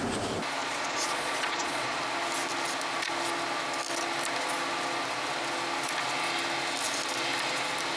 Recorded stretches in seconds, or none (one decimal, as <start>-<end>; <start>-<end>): 0.0-0.6; 2.0-8.0